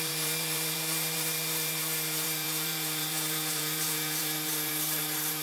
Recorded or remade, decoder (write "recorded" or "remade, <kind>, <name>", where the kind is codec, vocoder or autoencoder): remade, vocoder, BigVGAN v2